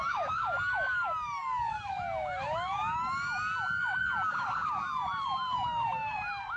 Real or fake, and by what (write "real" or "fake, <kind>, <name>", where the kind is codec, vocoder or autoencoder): fake, codec, DAC